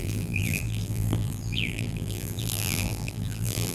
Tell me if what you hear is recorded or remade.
remade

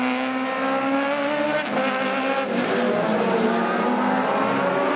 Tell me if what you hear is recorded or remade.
recorded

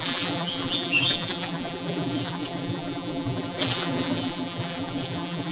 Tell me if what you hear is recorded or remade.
remade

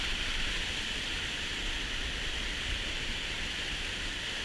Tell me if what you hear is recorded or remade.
remade